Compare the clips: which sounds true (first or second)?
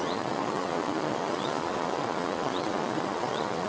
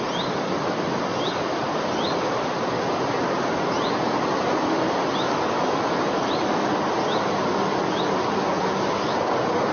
second